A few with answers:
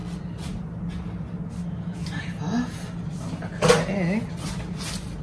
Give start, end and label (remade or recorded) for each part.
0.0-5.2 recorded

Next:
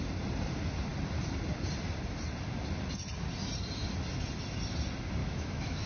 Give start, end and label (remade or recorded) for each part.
0.0-5.2 recorded; 5.2-5.9 remade

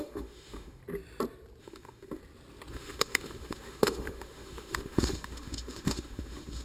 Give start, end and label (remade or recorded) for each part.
0.0-0.8 remade; 0.8-1.6 recorded; 1.6-2.2 remade; 2.2-2.7 recorded; 2.7-6.6 remade

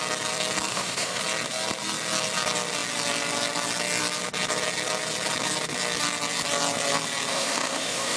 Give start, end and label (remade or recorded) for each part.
0.0-0.7 recorded; 0.7-1.2 remade; 1.2-7.3 recorded; 7.3-8.2 remade